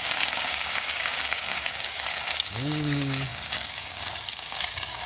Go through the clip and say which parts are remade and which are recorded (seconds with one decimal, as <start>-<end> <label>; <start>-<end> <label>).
0.0-5.1 remade